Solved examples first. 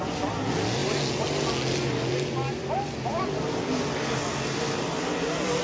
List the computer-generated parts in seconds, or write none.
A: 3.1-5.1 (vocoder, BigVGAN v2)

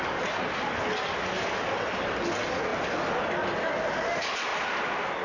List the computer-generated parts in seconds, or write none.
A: 4.5-5.2 (vocoder, BigVGAN v2)

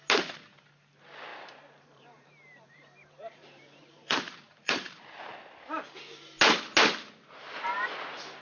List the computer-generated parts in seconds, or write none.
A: 1.3-5.2 (vocoder, BigVGAN v2)

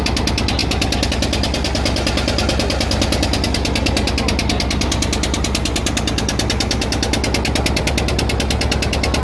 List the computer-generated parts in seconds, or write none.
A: none

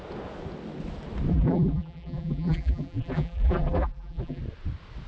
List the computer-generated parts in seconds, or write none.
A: 1.3-4.4 (vocoder, BigVGAN v2)